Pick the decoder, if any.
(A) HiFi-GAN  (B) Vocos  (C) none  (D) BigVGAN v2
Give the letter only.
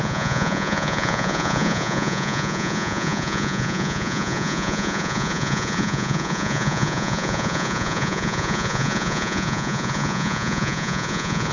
B